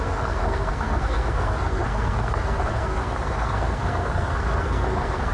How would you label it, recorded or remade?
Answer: remade